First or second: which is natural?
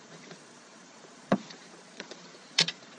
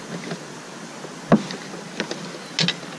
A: second